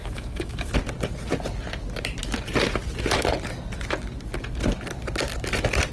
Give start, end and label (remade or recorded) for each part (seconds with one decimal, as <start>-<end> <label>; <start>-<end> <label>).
0.0-0.8 remade; 0.8-5.9 recorded